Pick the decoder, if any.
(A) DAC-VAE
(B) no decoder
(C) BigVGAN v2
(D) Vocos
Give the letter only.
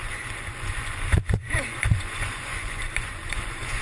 D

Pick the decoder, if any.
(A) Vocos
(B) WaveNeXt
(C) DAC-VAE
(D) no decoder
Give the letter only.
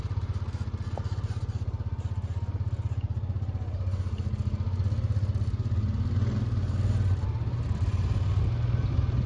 D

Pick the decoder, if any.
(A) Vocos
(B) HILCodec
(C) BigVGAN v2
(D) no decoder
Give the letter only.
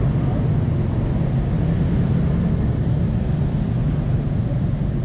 D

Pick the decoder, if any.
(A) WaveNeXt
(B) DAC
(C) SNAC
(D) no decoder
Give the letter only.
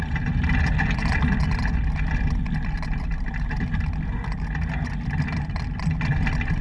D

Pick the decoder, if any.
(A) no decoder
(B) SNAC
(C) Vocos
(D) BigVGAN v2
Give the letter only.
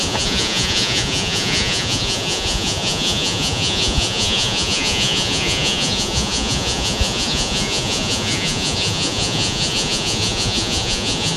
C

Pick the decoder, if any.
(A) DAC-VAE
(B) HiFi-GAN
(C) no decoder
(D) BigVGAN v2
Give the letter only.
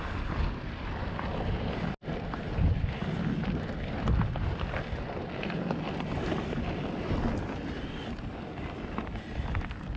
C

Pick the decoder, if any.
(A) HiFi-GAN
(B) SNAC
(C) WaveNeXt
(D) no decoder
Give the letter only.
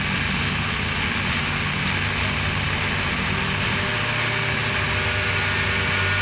D